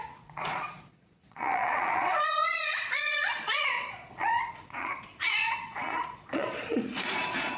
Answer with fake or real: fake